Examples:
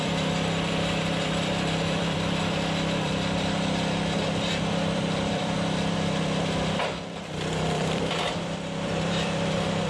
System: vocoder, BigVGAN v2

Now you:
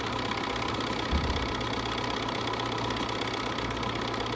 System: none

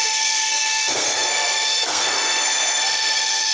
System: codec, SNAC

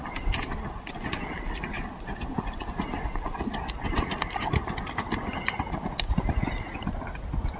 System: none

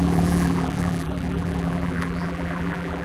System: vocoder, BigVGAN v2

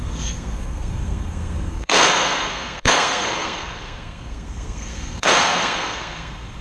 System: codec, SNAC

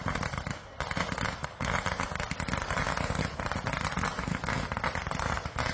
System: none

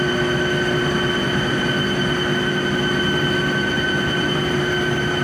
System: none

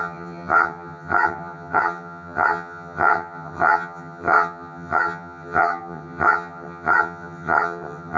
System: vocoder, HiFi-GAN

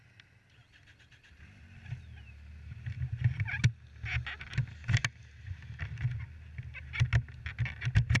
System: none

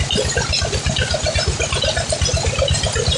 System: none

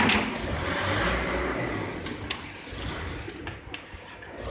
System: none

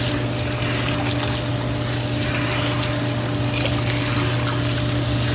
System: none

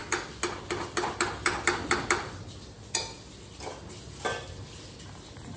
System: none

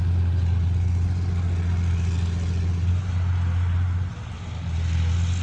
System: none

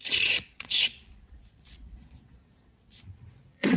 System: vocoder, Vocos